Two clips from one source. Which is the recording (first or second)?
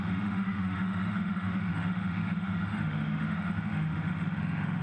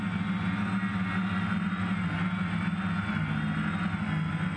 second